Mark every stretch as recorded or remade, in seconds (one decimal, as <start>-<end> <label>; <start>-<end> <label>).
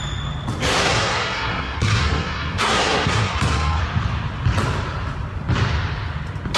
0.0-0.8 recorded; 0.8-3.8 remade; 3.8-6.6 recorded